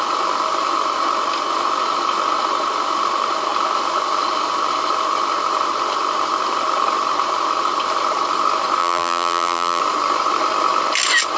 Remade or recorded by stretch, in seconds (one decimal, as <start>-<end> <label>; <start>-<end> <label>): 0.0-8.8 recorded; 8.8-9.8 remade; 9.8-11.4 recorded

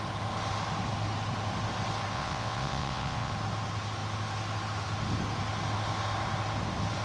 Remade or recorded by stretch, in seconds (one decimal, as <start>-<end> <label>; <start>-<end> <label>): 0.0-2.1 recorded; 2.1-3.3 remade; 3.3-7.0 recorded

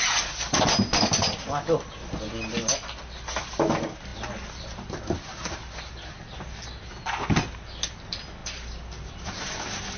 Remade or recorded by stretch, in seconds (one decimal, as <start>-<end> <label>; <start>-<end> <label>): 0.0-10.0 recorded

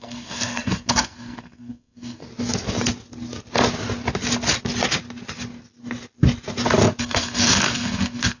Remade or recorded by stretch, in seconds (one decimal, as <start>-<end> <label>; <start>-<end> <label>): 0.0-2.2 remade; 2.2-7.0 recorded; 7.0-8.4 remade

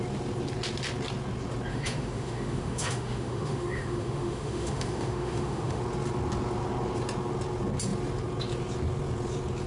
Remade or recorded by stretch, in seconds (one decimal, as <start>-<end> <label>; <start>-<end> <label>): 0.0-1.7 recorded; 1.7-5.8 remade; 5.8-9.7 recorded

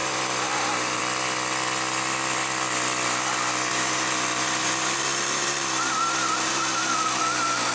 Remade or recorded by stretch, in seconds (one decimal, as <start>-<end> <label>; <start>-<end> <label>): 0.0-1.0 remade; 1.0-3.7 recorded; 3.7-7.2 remade; 7.2-7.7 recorded

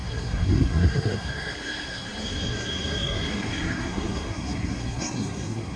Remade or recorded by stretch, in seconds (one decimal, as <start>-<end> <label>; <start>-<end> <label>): 0.0-5.8 remade